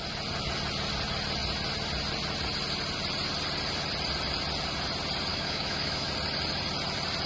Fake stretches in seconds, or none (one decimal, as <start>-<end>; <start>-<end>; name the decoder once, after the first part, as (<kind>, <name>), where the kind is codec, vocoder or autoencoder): 5.3-6.1 (autoencoder, DAC-VAE)